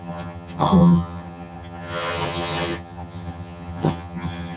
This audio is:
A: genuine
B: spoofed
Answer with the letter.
B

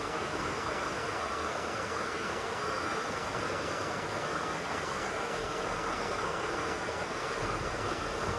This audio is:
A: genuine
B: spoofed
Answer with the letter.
B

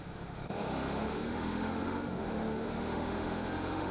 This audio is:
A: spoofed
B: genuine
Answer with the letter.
A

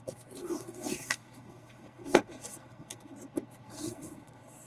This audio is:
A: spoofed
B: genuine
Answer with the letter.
A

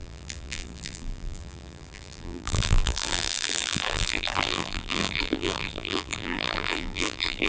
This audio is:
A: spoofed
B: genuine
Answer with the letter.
A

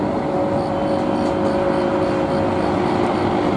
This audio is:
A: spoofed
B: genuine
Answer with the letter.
B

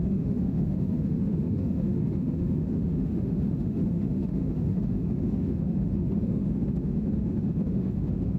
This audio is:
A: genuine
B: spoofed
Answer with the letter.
B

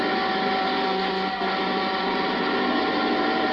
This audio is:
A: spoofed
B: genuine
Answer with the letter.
B